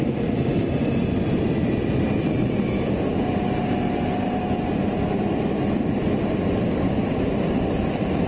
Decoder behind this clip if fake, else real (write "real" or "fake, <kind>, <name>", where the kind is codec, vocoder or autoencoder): fake, vocoder, BigVGAN v2